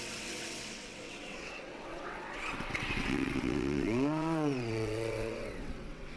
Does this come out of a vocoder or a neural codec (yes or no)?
yes